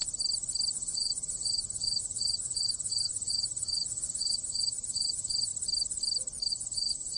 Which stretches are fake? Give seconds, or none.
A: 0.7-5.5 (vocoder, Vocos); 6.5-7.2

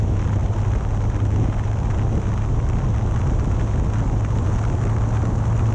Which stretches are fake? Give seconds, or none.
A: none

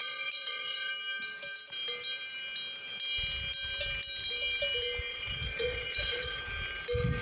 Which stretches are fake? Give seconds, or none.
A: 0.0-0.9 (vocoder, Vocos); 5.1-6.4

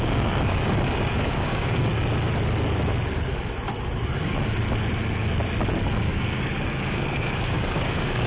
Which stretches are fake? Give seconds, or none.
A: 0.0-1.9 (codec, DAC); 5.8-8.3

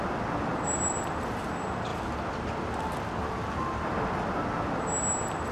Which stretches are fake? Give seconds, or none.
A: 0.5-1.5 (vocoder, BigVGAN v2)

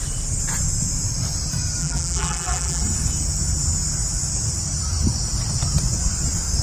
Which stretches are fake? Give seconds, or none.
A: 1.8-2.8 (vocoder, BigVGAN v2)

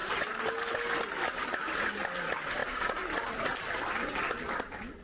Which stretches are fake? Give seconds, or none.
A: none

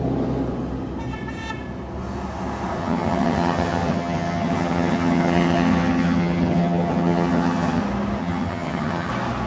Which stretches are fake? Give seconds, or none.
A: 2.8-7.8 (vocoder, HiFi-GAN); 8.2-9.1